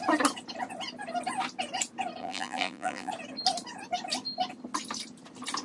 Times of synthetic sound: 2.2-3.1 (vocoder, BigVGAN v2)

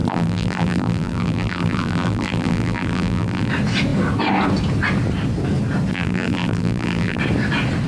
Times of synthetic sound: 0.0-3.5 (vocoder, BigVGAN v2); 5.9-7.2

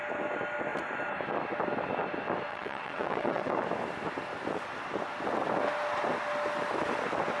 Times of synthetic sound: 2.5-3.5 (vocoder, WaveNeXt)

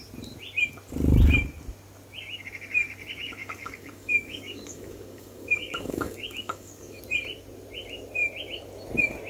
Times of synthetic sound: 3.4-7.0 (codec, DAC)

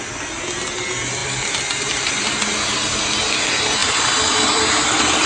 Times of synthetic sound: 1.2-3.0 (vocoder, BigVGAN v2); 3.8-5.3